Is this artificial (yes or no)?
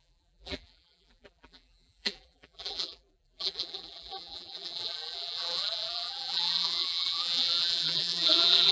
yes